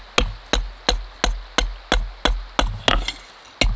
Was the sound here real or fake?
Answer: real